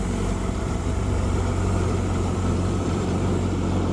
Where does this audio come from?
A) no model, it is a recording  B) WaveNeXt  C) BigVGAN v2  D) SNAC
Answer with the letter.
C